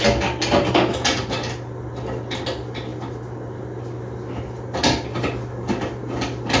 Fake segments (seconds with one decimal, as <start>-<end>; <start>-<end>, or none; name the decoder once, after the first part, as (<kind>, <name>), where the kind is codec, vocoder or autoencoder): none